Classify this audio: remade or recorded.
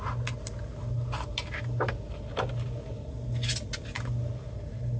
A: recorded